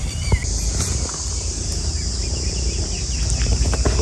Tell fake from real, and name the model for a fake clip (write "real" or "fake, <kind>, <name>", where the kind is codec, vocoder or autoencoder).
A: real